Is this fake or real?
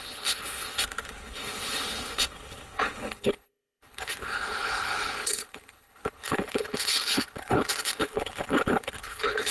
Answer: fake